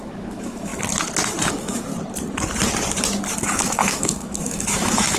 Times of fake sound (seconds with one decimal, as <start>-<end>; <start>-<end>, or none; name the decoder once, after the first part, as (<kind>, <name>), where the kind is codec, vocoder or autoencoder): 0.0-0.7 (autoencoder, DAC-VAE); 1.5-1.9; 3.4-5.2